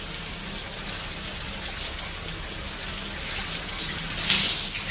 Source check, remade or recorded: recorded